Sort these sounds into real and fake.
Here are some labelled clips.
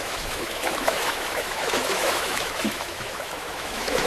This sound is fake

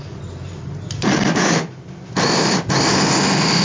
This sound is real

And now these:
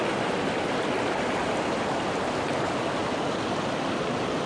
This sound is real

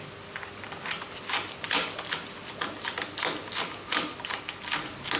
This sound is real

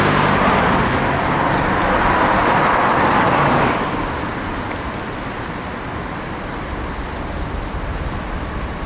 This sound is real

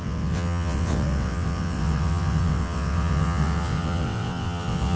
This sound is fake